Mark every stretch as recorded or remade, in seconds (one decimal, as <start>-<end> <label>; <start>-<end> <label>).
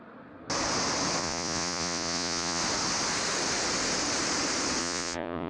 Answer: 0.0-1.2 recorded; 1.2-2.6 remade; 2.6-4.8 recorded; 4.8-5.5 remade